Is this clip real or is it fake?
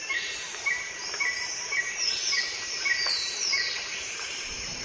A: fake